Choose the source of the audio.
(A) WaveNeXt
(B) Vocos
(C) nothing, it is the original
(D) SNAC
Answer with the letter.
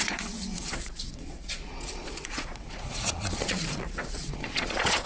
B